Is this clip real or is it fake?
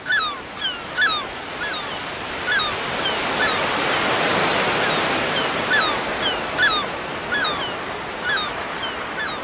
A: real